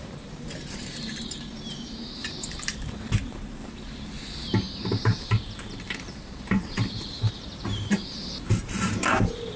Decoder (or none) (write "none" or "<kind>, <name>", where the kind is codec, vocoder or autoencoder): vocoder, BigVGAN v2